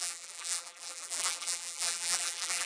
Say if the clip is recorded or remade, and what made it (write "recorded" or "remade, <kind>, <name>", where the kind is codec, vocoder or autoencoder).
remade, vocoder, BigVGAN v2